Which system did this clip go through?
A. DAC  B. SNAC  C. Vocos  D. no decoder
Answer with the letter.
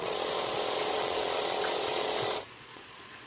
C